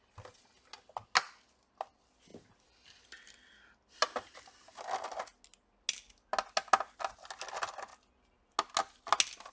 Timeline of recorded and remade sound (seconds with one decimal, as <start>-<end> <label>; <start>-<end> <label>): 0.0-9.5 recorded